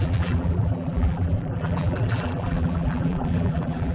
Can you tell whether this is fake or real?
fake